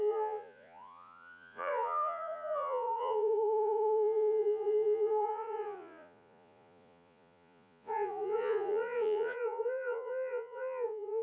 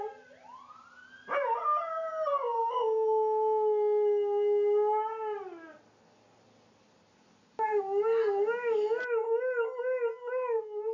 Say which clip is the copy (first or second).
first